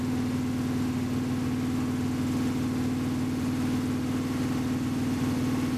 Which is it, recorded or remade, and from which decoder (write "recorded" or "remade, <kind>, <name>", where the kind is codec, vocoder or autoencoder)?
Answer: recorded